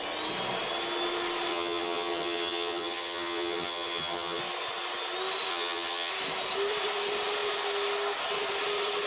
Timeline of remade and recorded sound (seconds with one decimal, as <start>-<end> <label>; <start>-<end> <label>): 0.0-1.5 recorded; 1.5-4.4 remade; 4.4-5.5 recorded; 5.5-6.1 remade; 6.1-9.1 recorded